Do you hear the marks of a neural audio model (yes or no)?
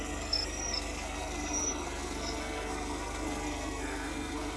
yes